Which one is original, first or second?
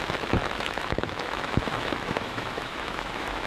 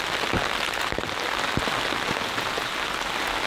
second